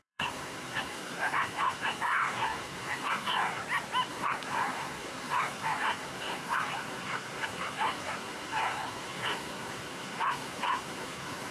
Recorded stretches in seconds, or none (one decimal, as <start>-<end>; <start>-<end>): 3.6-4.1